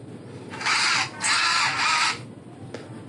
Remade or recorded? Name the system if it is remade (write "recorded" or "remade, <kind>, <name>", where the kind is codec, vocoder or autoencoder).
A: recorded